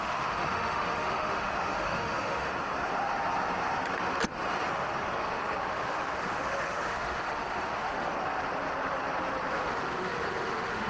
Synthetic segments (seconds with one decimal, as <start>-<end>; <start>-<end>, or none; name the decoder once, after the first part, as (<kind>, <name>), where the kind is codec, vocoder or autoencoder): 0.0-2.5 (autoencoder, DAC-VAE); 5.7-8.1; 9.5-10.9